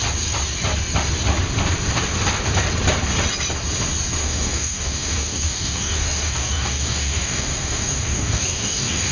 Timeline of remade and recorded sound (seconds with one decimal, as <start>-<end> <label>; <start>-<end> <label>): 0.0-4.2 recorded; 4.2-9.1 remade